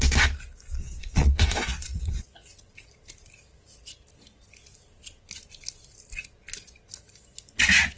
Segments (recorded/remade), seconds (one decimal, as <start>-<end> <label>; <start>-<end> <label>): 0.0-0.8 recorded; 0.8-2.5 remade; 2.5-8.0 recorded